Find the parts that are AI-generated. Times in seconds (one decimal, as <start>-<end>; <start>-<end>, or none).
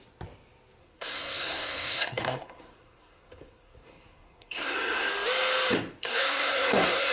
0.8-5.1; 6.0-7.1